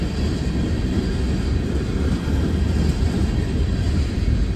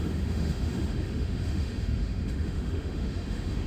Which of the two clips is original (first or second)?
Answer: first